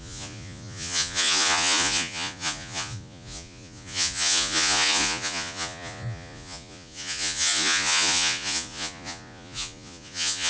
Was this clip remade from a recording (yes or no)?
yes